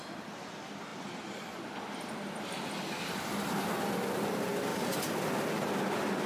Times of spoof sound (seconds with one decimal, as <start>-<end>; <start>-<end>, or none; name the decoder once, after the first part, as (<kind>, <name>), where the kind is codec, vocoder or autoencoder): 4.7-5.6 (vocoder, BigVGAN v2)